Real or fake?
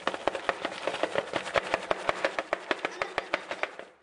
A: real